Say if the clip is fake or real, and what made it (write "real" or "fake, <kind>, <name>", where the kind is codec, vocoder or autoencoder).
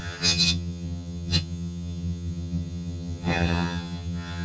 fake, vocoder, HiFi-GAN